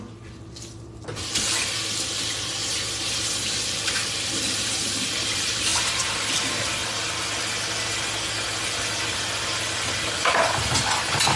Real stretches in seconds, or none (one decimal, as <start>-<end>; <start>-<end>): 2.6-3.4; 6.8-11.4